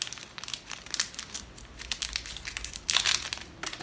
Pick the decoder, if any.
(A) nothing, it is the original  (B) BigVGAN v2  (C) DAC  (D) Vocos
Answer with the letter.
A